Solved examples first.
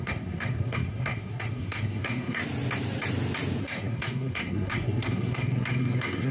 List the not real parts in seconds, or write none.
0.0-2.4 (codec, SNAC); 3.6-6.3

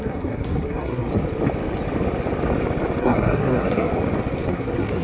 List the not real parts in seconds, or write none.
0.0-1.1 (codec, SNAC); 3.0-3.9; 4.5-5.0

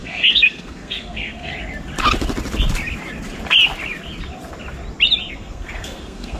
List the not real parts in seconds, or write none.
0.0-1.5 (codec, SNAC); 5.3-6.4

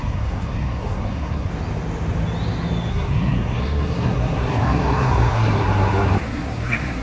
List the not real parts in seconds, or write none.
0.0-1.5 (codec, SNAC); 2.9-7.0

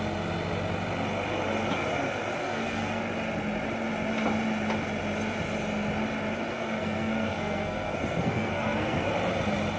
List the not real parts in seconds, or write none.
2.4-3.0 (codec, SNAC); 6.5-9.1

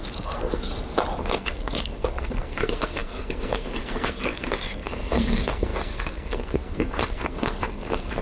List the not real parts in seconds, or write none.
0.0-0.7 (codec, SNAC); 1.2-8.2

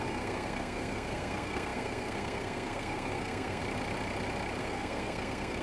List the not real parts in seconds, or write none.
0.0-3.6 (codec, SNAC); 4.6-5.6

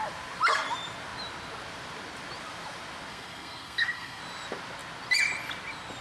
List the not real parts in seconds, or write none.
3.1-4.2 (codec, SNAC)